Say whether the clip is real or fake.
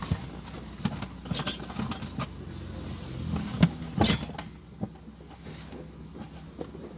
real